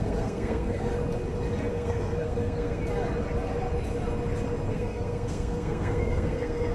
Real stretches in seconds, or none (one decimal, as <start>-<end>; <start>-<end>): 0.9-1.7; 2.8-4.7